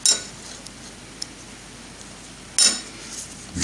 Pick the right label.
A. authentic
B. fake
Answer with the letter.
A